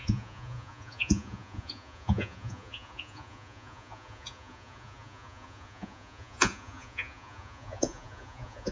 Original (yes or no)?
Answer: no